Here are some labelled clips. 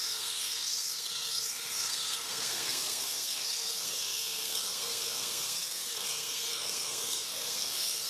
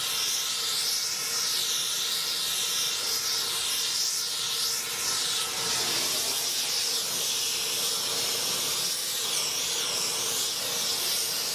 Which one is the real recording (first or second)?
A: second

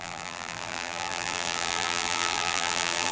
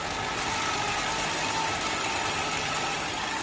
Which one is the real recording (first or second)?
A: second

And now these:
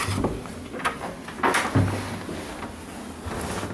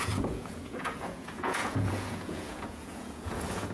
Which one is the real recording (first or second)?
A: first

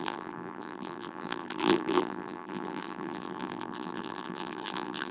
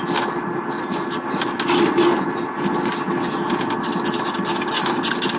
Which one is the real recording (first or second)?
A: second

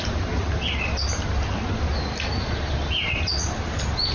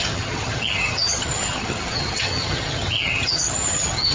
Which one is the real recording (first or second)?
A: first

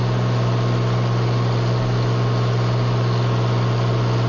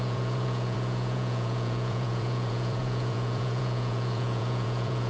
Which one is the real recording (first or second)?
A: first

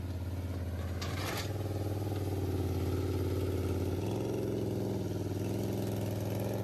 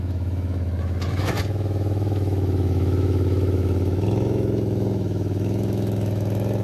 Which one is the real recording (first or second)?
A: first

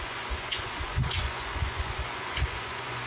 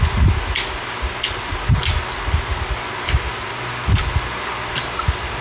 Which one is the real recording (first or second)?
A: second